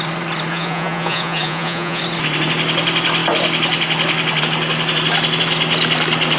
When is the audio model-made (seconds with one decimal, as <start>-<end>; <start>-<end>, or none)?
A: 0.5-2.0